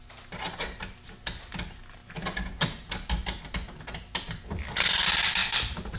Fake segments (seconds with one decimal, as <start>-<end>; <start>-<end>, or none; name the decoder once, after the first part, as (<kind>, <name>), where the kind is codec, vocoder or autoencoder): 5.4-6.0 (vocoder, BigVGAN v2)